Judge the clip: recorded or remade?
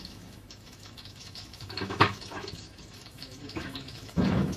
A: remade